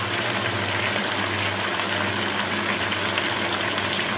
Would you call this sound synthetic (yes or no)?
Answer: no